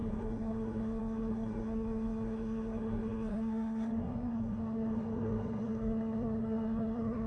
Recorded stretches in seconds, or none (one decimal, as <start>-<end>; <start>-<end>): none